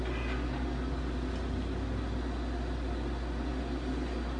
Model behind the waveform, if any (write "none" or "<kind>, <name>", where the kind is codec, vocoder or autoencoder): none